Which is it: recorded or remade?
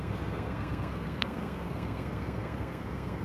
remade